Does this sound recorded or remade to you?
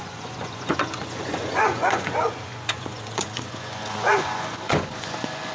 remade